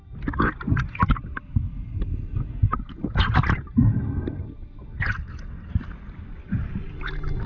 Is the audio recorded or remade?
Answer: recorded